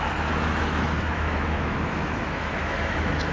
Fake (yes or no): yes